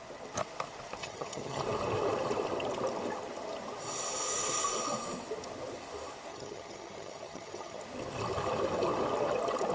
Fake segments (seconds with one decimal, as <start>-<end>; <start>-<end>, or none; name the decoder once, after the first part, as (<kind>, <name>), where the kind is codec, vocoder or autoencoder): 1.0-1.6 (vocoder, HiFi-GAN); 6.3-7.8